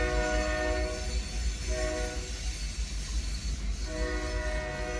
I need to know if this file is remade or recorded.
recorded